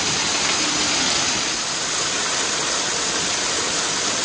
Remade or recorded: recorded